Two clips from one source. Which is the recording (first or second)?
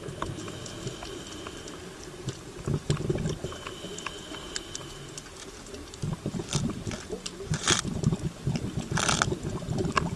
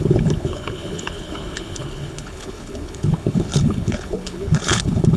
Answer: first